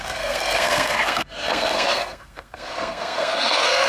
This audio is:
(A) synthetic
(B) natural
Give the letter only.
A